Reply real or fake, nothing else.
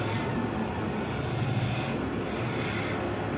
real